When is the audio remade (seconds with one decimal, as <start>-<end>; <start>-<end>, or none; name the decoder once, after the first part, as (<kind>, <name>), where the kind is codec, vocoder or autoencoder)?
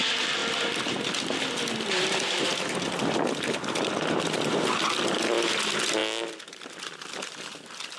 none